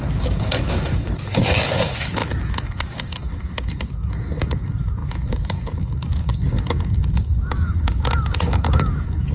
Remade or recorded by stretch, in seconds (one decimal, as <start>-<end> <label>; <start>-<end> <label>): 0.0-9.3 remade